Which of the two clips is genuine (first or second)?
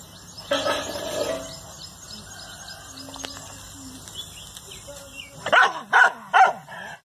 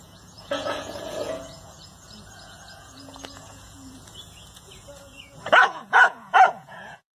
first